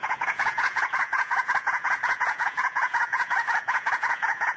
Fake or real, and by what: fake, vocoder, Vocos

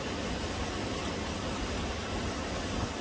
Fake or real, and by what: real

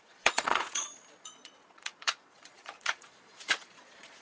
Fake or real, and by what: fake, vocoder, Vocos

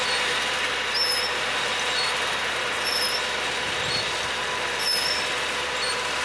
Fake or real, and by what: real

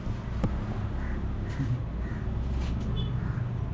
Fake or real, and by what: real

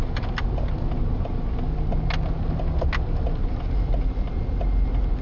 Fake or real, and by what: real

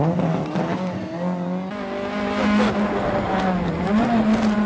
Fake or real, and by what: real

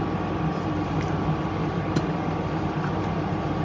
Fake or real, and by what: real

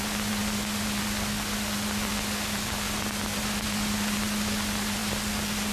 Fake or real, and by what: real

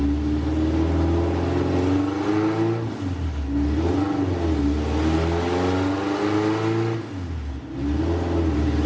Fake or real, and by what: real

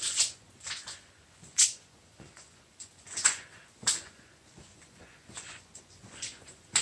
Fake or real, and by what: fake, vocoder, Vocos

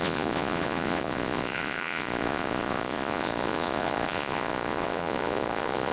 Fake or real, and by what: fake, vocoder, Vocos